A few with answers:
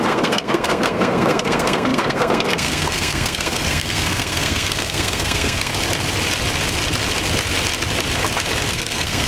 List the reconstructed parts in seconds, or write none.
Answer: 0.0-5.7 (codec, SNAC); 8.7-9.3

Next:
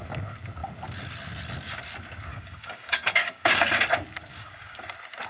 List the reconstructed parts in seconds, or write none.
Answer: 2.3-3.7 (codec, DAC); 4.3-4.8

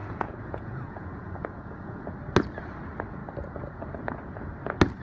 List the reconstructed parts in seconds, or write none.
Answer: 0.0-2.1 (vocoder, Vocos)

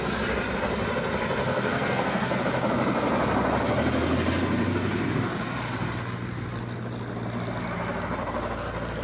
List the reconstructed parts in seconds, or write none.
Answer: 1.4-2.4 (codec, SNAC)

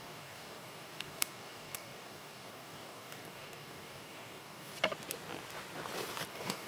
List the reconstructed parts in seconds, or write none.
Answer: 0.0-4.7 (codec, DAC); 6.3-6.7

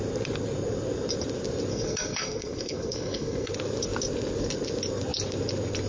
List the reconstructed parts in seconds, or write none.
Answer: 1.7-3.5 (codec, SNAC)

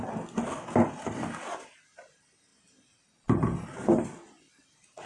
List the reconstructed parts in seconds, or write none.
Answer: none